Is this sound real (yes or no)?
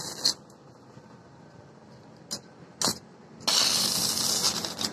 yes